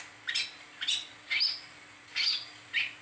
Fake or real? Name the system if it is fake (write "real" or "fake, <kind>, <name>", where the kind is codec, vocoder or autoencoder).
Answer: real